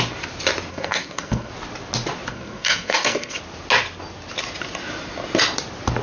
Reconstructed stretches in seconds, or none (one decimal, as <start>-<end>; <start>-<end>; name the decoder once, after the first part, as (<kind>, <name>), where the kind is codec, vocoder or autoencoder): 0.7-1.5 (codec, SNAC); 2.3-3.4